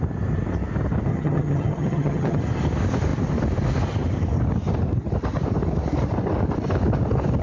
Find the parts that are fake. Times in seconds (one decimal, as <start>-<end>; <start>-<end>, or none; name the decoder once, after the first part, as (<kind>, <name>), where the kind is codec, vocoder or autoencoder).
1.1-2.4 (vocoder, HiFi-GAN)